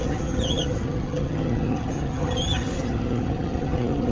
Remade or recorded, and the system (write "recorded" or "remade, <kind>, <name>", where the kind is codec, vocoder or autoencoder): remade, vocoder, HiFi-GAN